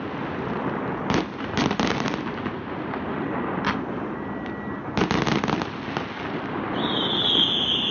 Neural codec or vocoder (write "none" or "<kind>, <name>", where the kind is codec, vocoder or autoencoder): none